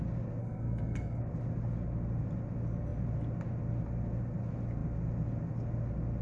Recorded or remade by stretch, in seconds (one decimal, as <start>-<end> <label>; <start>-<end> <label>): 0.0-0.4 recorded; 0.4-1.2 remade; 1.2-6.2 recorded